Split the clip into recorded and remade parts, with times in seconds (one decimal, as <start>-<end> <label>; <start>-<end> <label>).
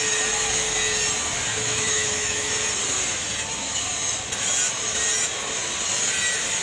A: 0.0-1.5 recorded; 1.5-2.5 remade; 2.5-6.6 recorded